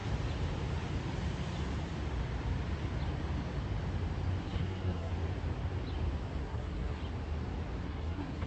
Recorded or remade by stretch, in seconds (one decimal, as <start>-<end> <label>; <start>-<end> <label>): 0.0-4.4 recorded; 4.4-5.1 remade; 5.1-6.4 recorded; 6.4-7.0 remade; 7.0-7.8 recorded; 7.8-8.5 remade